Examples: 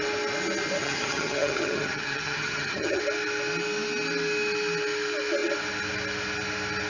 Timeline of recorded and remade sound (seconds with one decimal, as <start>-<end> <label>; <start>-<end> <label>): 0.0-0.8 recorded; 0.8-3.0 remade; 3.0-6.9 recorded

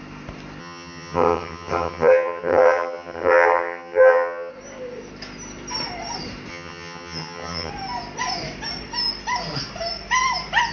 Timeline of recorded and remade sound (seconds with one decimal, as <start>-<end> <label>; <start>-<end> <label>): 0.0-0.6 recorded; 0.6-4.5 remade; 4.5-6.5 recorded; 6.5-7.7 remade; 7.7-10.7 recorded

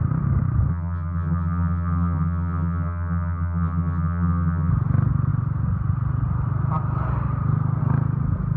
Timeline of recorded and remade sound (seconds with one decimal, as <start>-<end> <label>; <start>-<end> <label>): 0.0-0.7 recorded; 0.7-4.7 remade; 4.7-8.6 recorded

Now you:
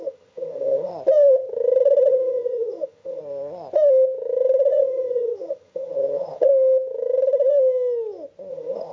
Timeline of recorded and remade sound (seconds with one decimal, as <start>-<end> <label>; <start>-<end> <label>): 0.0-0.9 remade; 0.9-2.1 recorded; 2.1-3.2 remade; 3.2-4.7 recorded; 4.7-6.5 remade; 6.5-8.5 recorded; 8.5-8.9 remade

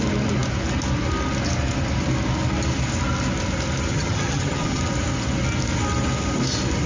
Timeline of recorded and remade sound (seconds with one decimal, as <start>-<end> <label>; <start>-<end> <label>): 0.0-3.9 recorded; 3.9-4.8 remade; 4.8-6.9 recorded

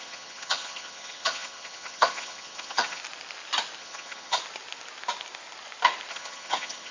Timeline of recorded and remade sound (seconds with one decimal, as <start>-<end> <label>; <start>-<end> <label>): 0.0-3.0 remade; 3.0-3.8 recorded; 3.8-4.4 remade; 4.4-6.1 recorded; 6.1-6.9 remade